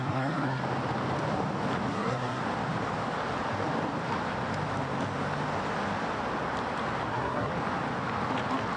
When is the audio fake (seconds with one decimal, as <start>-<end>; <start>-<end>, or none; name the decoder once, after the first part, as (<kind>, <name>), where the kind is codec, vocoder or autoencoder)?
0.0-0.6 (codec, SNAC); 1.9-2.4; 7.1-7.5